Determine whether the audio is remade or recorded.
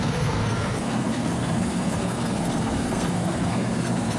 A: remade